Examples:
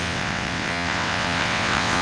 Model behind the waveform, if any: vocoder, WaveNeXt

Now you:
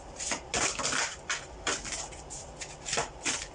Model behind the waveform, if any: none